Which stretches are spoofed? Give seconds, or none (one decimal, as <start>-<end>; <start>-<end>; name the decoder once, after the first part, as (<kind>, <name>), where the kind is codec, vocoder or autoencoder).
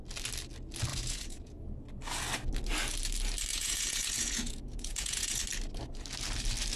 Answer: 0.9-1.6 (vocoder, Vocos); 3.5-5.4